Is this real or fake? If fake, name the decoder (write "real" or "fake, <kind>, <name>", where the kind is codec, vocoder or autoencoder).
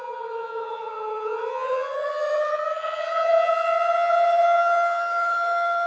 fake, vocoder, HiFi-GAN